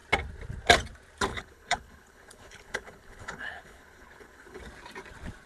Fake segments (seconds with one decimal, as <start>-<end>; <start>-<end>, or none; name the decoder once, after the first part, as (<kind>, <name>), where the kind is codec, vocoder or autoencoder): 1.3-4.6 (codec, HILCodec)